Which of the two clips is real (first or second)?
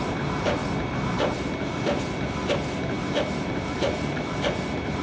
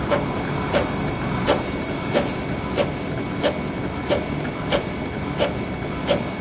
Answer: second